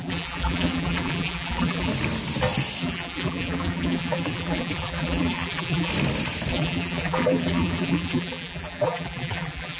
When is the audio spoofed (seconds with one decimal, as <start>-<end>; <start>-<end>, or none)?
0.0-1.9; 2.8-5.9; 6.5-9.8